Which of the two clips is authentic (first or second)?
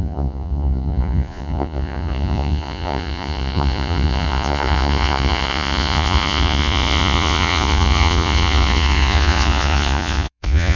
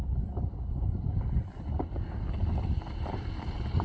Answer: second